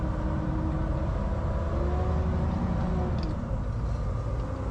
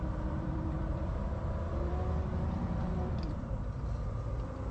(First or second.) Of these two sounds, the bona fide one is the first